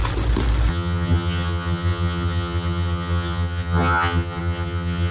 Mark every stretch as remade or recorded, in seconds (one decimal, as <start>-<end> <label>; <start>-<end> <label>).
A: 0.0-0.7 recorded; 0.7-5.1 remade